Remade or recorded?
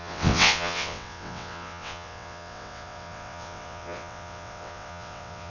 remade